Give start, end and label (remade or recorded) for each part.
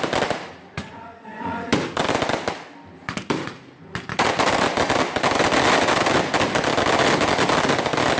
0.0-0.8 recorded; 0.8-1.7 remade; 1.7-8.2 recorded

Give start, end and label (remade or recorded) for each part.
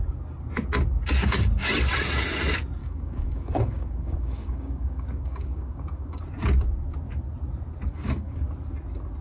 0.0-2.8 recorded; 2.8-6.2 remade; 6.2-7.9 recorded; 7.9-8.4 remade; 8.4-9.2 recorded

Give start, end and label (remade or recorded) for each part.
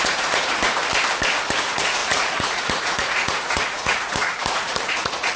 0.0-0.8 remade; 0.8-1.6 recorded; 1.6-5.4 remade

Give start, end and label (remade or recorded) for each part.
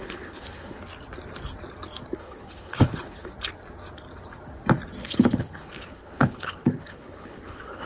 0.0-0.8 remade; 0.8-2.2 recorded; 2.2-3.3 remade; 3.3-5.0 recorded; 5.0-7.9 remade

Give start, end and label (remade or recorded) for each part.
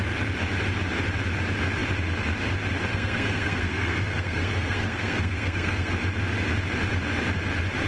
0.0-2.9 recorded; 2.9-5.9 remade; 5.9-7.9 recorded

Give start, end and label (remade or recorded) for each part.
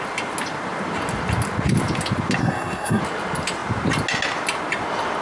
0.0-2.4 recorded; 2.4-3.0 remade; 3.0-5.2 recorded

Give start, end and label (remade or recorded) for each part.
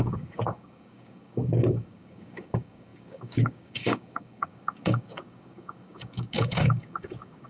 0.0-7.5 remade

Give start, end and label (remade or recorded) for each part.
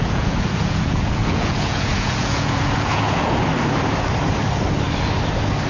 0.0-3.4 remade; 3.4-5.7 recorded